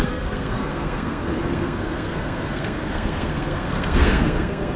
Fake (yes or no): yes